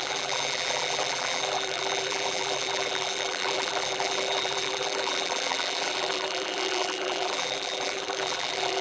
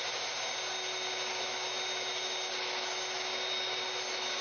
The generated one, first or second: first